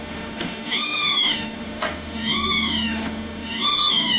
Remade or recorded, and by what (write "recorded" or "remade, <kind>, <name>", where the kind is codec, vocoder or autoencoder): remade, autoencoder, DAC-VAE